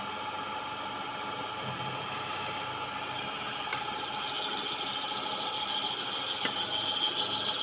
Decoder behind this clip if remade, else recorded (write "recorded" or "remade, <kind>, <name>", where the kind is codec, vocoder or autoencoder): recorded